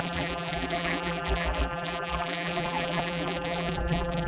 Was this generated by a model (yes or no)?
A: yes